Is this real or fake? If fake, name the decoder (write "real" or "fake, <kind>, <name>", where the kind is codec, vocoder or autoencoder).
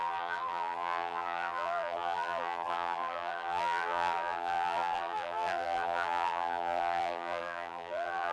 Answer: fake, vocoder, BigVGAN v2